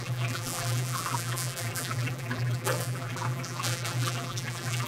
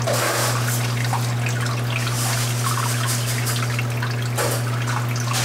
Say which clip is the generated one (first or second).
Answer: first